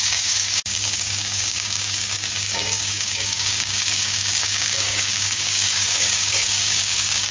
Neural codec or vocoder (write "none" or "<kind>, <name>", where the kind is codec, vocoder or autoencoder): codec, DAC